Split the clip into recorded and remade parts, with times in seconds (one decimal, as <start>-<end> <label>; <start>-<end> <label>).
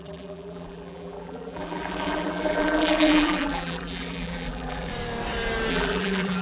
0.0-4.9 remade; 4.9-5.7 recorded; 5.7-6.4 remade